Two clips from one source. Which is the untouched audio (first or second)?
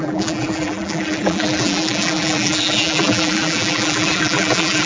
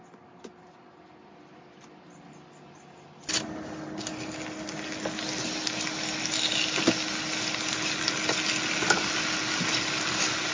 second